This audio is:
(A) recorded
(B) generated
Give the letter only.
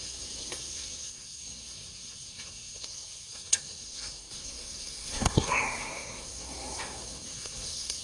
B